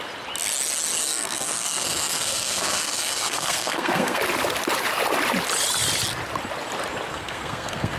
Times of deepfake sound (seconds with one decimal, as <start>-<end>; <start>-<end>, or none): 1.0-4.2; 7.1-8.0